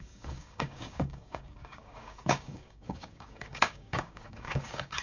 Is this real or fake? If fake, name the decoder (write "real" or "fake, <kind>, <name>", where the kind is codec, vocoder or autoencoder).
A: fake, codec, DAC